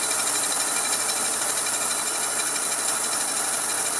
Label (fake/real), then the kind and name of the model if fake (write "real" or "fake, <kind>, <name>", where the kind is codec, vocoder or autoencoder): real